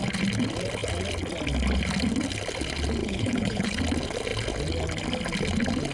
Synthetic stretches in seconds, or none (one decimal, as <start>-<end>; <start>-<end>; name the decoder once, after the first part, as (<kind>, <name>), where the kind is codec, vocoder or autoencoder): 3.0-3.8 (codec, HILCodec)